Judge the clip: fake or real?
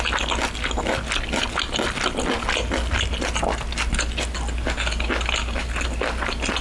real